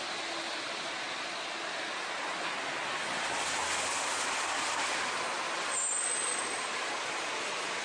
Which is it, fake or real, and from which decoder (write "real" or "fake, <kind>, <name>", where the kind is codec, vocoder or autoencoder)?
real